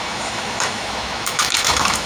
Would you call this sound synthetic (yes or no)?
yes